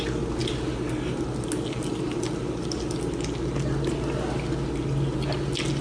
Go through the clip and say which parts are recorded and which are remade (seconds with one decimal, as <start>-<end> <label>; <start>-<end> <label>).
0.0-5.8 recorded